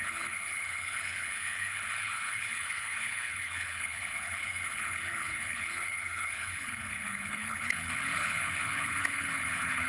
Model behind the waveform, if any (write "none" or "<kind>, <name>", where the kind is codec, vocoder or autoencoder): codec, HILCodec